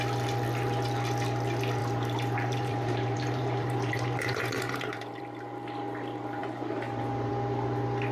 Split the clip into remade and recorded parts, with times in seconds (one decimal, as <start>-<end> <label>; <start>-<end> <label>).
0.0-1.8 recorded; 1.8-5.2 remade; 5.2-6.4 recorded; 6.4-7.3 remade; 7.3-8.1 recorded